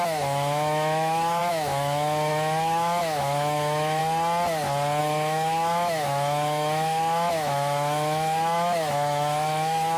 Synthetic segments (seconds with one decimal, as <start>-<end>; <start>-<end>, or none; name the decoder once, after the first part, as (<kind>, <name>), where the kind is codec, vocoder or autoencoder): 0.0-4.0 (autoencoder, DAC-VAE); 5.0-10.0